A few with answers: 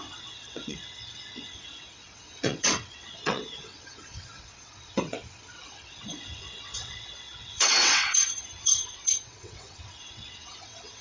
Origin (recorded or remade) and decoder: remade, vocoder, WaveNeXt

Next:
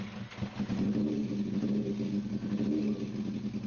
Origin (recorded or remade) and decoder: recorded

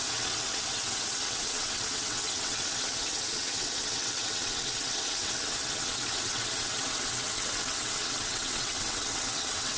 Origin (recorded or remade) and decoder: remade, vocoder, WaveNeXt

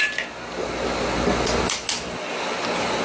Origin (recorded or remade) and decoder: recorded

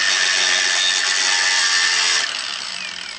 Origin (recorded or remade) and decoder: recorded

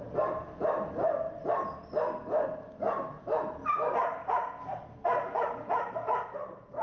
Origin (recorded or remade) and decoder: recorded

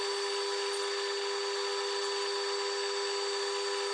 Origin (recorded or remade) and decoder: recorded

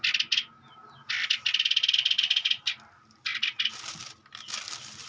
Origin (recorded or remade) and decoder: recorded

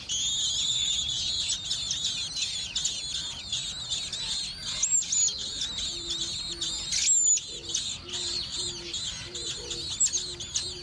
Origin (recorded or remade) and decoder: recorded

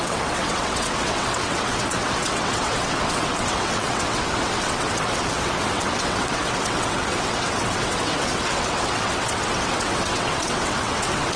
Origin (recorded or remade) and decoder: remade, vocoder, WaveNeXt